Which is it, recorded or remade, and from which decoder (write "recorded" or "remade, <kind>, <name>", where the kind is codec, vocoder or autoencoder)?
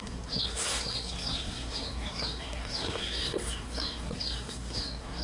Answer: remade, codec, SNAC